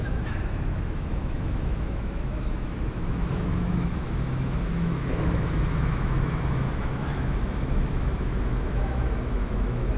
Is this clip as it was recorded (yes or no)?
no